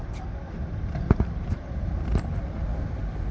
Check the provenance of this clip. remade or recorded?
remade